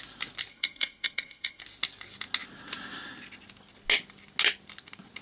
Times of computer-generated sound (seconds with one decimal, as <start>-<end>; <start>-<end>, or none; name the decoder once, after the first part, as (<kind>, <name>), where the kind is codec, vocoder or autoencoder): 0.5-1.6 (codec, SNAC)